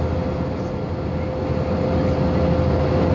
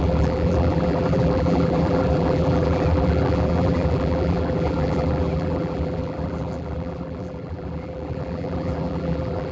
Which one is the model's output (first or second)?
second